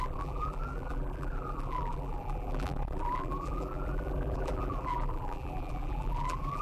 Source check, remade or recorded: remade